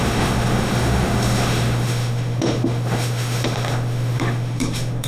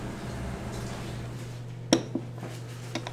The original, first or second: second